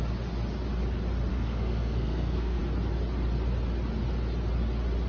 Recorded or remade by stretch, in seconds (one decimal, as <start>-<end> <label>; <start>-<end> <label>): 0.0-1.3 recorded; 1.3-2.6 remade; 2.6-5.1 recorded